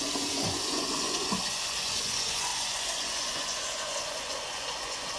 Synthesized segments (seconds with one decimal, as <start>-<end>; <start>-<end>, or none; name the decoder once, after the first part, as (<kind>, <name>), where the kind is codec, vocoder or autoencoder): 0.0-5.2 (vocoder, Vocos)